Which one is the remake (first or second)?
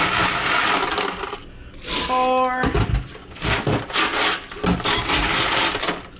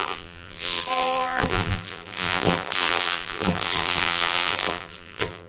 second